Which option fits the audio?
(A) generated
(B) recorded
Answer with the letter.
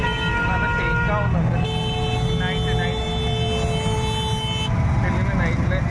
B